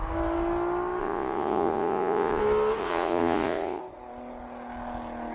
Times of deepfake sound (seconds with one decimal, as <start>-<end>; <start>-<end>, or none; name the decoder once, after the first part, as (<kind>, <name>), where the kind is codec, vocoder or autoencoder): 1.0-2.4 (vocoder, Vocos); 2.8-3.8